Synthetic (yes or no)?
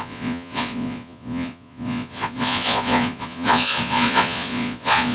yes